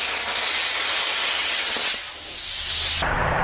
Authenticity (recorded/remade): recorded